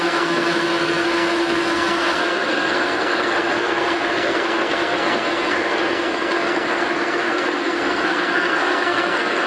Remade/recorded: remade